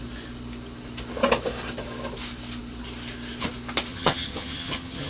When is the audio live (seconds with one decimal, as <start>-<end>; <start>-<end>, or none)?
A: 0.0-3.9